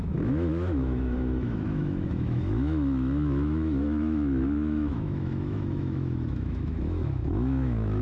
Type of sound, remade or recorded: remade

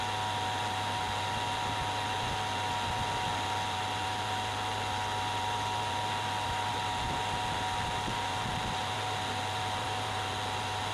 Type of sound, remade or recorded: recorded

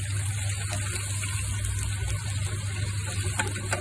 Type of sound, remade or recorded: recorded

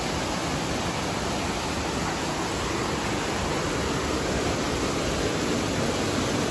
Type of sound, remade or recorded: recorded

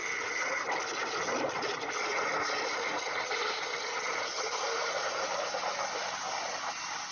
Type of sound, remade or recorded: recorded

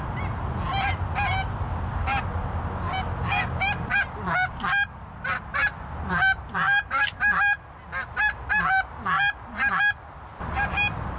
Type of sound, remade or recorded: recorded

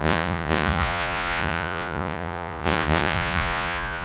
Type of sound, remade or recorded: remade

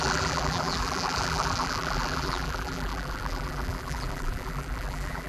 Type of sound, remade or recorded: remade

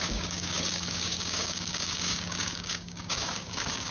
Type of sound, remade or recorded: remade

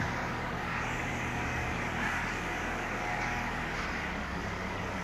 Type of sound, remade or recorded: remade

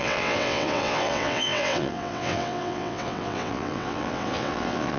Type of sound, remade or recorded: remade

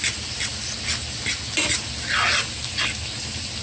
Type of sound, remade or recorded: recorded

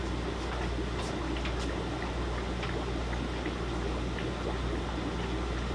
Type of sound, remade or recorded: recorded